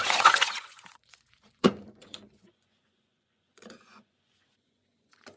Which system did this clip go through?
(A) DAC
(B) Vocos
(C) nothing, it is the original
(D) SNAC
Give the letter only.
B